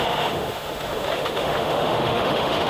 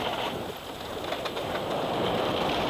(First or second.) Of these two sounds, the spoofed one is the first